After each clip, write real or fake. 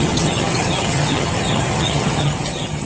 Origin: fake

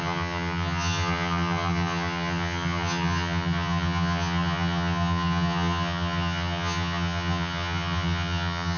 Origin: fake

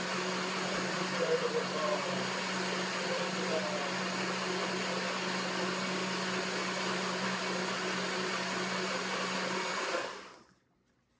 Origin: real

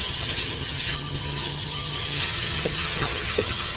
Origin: fake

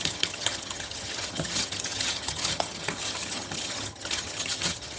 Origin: fake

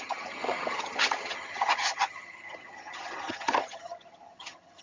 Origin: fake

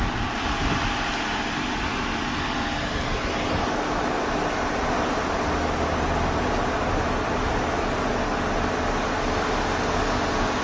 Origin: real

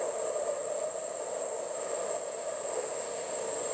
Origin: real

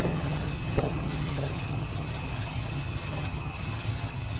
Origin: fake